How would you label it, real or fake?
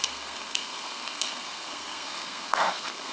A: fake